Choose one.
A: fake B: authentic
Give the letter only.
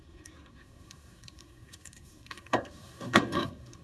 A